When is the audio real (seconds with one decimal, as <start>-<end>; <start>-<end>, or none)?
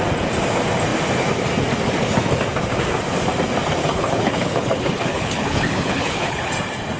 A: 0.0-3.8; 6.5-7.0